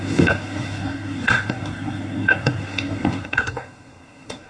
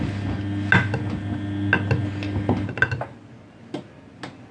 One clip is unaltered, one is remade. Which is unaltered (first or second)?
second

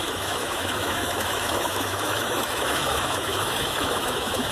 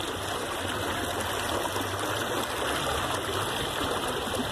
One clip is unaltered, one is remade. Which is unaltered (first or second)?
second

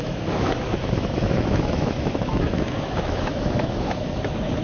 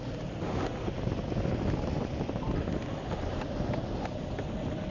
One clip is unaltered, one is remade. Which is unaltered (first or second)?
second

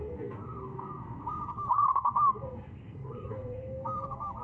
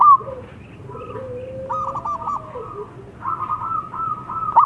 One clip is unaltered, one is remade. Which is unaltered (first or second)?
second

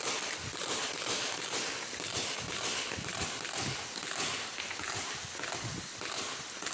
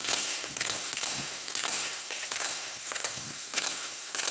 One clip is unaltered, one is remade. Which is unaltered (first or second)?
first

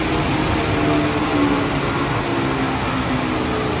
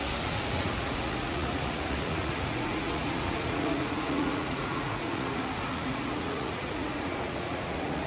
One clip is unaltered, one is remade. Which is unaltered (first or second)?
first